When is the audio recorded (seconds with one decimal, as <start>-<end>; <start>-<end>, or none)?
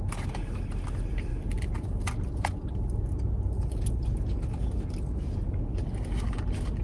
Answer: 0.0-6.8